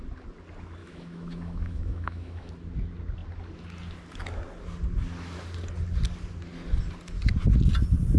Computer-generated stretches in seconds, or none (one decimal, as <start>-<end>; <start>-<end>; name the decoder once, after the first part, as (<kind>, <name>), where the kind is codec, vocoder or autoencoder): 0.8-2.5 (autoencoder, DAC-VAE)